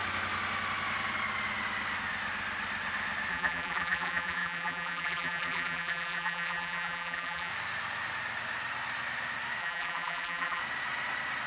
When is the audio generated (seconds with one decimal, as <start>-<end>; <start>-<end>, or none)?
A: 3.3-7.5; 9.6-10.6